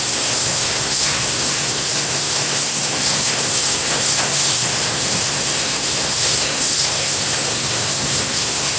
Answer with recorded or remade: remade